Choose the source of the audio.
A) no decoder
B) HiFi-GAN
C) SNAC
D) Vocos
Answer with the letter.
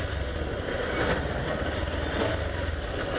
A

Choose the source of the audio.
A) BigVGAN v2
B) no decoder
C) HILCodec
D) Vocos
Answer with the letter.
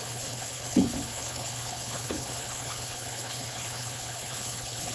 C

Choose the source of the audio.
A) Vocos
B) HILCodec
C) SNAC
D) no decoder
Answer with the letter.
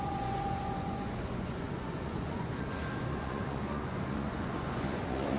A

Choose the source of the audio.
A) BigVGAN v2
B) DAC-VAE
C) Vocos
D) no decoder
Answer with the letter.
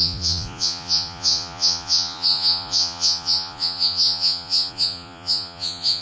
C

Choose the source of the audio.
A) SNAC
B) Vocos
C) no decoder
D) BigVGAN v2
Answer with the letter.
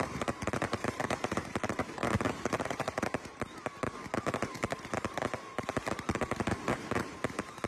D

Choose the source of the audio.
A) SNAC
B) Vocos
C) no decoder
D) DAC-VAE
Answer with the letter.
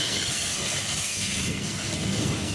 A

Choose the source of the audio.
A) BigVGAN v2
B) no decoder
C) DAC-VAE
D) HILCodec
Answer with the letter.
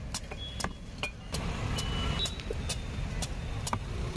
B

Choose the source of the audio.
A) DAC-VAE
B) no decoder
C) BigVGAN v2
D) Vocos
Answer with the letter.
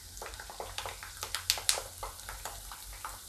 B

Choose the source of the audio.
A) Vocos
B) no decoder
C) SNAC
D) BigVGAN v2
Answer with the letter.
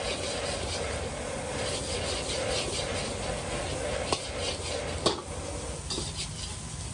B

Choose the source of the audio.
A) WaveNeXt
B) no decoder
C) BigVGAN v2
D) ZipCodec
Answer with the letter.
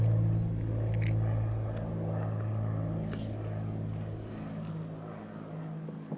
B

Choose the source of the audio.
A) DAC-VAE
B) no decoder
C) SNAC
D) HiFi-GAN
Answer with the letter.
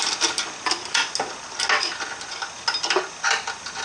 B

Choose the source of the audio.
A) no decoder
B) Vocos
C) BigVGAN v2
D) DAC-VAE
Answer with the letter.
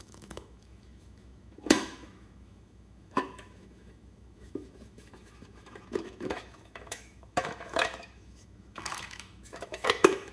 D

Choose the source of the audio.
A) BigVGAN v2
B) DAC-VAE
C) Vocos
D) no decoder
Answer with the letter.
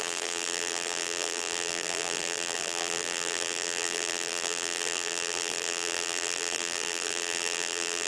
A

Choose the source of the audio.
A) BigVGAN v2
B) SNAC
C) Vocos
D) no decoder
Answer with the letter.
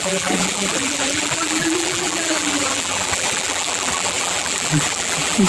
A